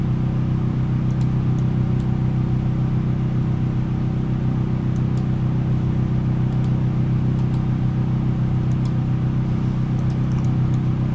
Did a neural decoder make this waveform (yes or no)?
no